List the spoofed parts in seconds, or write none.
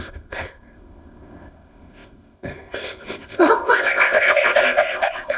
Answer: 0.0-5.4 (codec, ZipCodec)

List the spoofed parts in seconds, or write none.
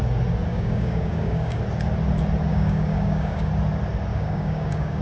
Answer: 0.5-1.6 (codec, DAC); 2.5-3.5; 4.1-5.0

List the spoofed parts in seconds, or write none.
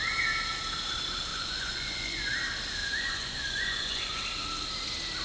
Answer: 1.3-2.3 (vocoder, Vocos); 2.8-4.2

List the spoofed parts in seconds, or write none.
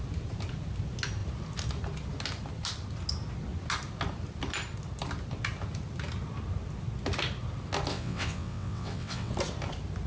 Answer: 7.9-9.3 (vocoder, WaveNeXt)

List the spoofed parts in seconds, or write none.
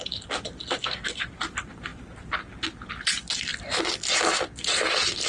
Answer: 0.8-1.3 (codec, SNAC)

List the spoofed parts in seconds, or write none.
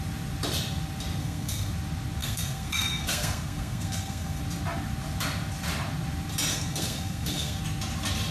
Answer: 1.2-1.7 (codec, SNAC); 2.2-4.4; 6.5-7.6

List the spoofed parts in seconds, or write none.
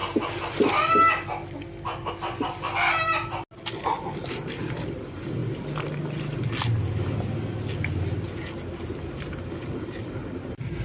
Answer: none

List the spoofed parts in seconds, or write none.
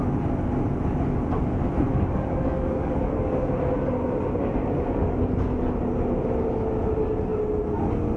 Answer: 1.9-3.5 (codec, DAC); 4.6-5.2